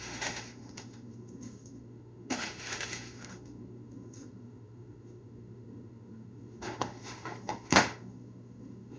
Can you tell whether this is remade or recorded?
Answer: remade